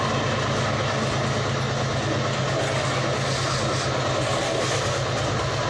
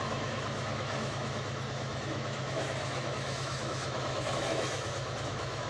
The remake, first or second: second